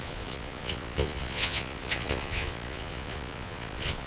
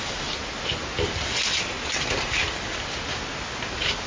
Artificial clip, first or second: first